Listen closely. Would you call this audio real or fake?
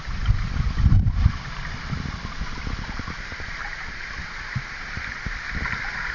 real